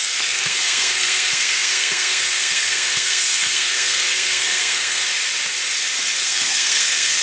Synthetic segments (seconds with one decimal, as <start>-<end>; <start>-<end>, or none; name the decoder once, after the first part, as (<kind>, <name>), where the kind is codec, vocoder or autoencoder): 0.0-5.0 (codec, SNAC); 6.2-7.2